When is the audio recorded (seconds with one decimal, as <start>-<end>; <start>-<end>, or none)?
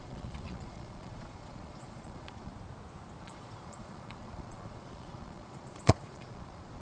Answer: 2.5-3.2